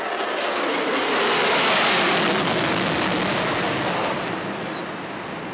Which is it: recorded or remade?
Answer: recorded